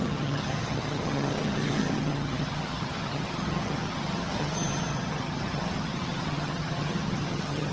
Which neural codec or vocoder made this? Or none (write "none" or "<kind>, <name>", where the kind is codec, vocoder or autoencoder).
vocoder, HiFi-GAN